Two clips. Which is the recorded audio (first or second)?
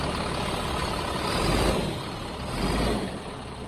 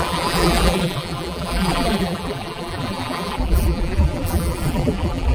first